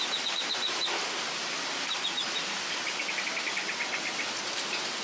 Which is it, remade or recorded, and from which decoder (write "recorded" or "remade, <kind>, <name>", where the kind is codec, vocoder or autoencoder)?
recorded